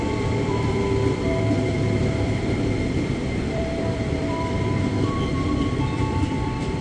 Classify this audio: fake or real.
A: fake